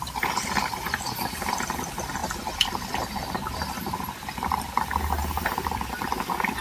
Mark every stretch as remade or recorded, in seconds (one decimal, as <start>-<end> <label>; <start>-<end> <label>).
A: 0.0-6.6 recorded